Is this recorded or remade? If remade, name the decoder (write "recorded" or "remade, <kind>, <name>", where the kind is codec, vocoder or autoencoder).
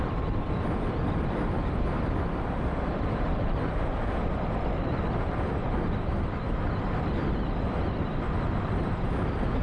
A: recorded